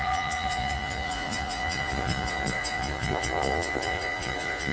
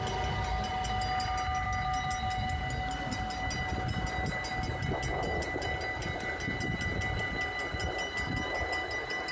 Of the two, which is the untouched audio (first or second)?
second